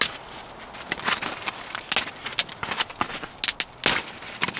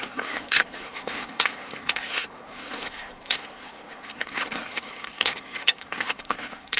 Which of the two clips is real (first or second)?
first